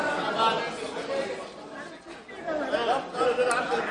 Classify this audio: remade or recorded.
recorded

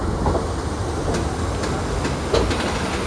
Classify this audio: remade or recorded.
recorded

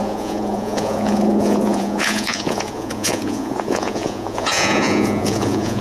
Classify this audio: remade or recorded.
remade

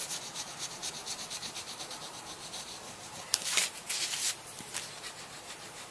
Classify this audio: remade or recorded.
remade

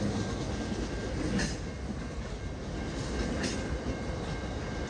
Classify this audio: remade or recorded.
recorded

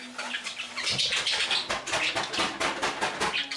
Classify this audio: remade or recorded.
recorded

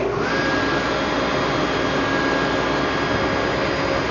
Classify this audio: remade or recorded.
recorded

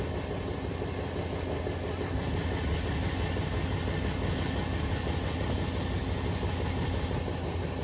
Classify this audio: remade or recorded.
recorded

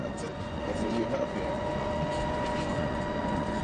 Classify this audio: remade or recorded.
remade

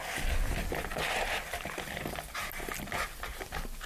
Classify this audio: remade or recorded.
recorded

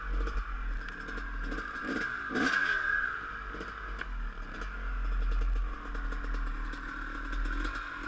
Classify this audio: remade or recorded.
recorded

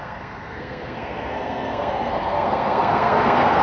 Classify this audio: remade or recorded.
remade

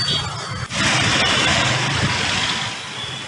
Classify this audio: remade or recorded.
recorded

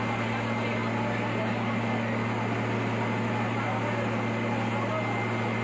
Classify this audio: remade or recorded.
recorded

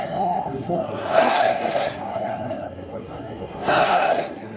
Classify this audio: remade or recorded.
remade